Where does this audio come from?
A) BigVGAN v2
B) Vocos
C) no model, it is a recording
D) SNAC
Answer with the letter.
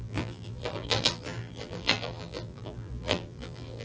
A